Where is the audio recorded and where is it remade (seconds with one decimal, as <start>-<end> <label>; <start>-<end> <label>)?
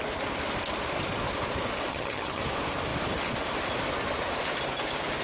0.0-1.9 recorded; 1.9-2.4 remade; 2.4-5.2 recorded